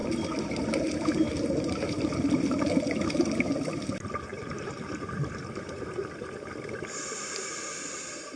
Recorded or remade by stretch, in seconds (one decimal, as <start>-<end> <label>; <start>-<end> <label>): 0.0-2.6 remade; 2.6-4.3 recorded; 4.3-5.7 remade; 5.7-8.4 recorded